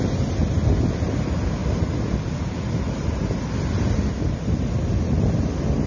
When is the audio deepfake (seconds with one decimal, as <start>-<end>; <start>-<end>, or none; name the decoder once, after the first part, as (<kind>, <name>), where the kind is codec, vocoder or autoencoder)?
none